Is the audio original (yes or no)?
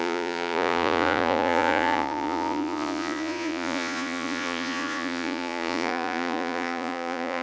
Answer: no